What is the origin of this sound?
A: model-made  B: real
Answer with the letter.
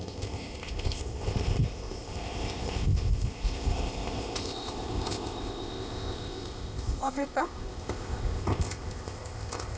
A